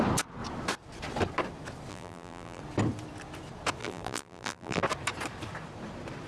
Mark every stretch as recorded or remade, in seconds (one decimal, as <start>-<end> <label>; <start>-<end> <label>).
0.0-1.9 recorded; 1.9-2.6 remade; 2.6-3.8 recorded; 3.8-4.8 remade; 4.8-6.3 recorded